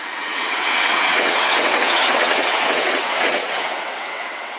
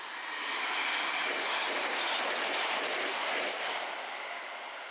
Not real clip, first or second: first